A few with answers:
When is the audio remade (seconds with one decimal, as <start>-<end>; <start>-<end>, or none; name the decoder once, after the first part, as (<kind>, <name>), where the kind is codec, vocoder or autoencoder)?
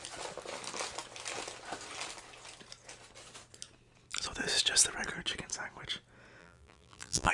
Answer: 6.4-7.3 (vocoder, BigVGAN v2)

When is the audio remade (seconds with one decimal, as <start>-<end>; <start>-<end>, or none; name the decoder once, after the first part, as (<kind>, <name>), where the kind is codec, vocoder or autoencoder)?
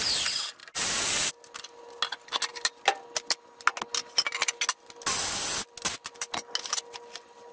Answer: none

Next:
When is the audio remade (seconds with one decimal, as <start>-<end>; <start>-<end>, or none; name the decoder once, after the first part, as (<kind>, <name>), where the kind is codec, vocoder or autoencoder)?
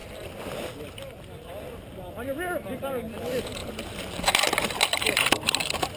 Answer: none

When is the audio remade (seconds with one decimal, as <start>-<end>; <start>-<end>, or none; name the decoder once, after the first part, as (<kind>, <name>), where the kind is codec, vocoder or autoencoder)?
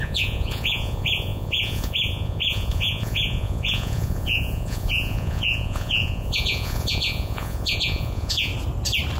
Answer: 0.0-8.5 (vocoder, Vocos)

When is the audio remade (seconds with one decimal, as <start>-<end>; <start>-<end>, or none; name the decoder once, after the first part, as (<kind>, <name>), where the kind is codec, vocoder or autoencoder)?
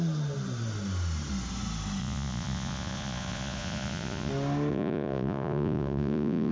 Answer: 2.0-4.3 (vocoder, Vocos); 4.7-6.5